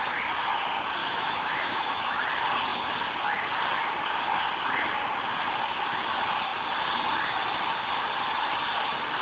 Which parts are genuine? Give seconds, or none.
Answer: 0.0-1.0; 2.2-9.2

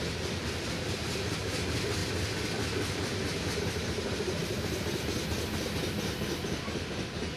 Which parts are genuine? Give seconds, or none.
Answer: 2.0-3.6; 4.4-5.8

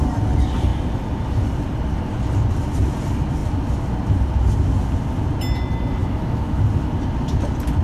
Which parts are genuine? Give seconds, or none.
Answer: 0.0-6.0; 6.6-7.8